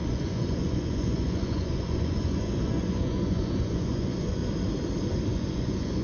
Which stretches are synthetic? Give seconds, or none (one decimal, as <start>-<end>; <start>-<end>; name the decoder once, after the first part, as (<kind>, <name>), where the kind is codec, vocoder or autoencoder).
0.0-4.4 (vocoder, Vocos); 5.3-6.0